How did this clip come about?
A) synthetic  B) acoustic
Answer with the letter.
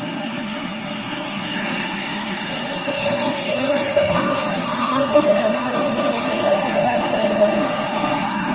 A